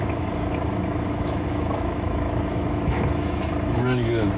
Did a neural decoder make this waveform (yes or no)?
yes